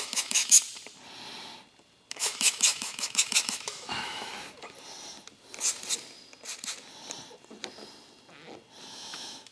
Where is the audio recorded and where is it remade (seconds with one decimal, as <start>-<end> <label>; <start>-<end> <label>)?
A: 0.0-0.6 remade; 0.6-2.1 recorded; 2.1-4.3 remade; 4.3-8.9 recorded; 8.9-9.5 remade